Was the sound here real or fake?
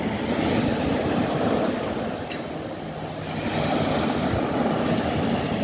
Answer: real